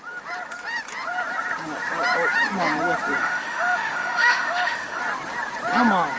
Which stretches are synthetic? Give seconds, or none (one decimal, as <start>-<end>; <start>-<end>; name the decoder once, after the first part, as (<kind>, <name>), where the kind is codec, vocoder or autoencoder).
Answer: 3.2-5.0 (autoencoder, DAC-VAE)